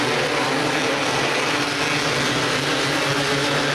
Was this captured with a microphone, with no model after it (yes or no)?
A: yes